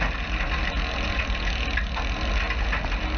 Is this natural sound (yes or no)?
yes